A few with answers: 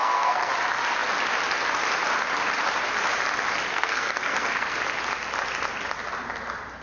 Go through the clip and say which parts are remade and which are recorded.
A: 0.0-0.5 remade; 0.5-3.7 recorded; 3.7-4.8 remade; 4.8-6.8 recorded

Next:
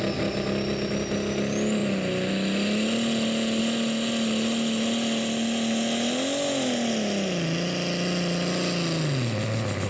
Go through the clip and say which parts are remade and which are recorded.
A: 0.0-9.9 recorded

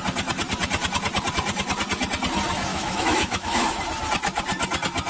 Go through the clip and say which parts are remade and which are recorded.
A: 0.0-2.7 recorded; 2.7-3.7 remade; 3.7-5.1 recorded